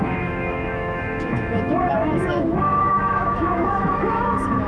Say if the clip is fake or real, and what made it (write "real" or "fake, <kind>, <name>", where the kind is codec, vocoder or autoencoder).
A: fake, autoencoder, DAC-VAE